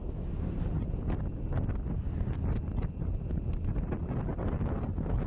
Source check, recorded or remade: recorded